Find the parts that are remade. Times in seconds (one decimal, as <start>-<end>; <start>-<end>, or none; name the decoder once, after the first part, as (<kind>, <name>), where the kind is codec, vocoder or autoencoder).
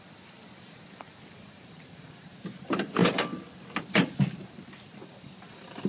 none